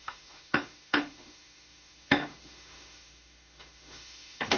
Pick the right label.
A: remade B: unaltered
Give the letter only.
A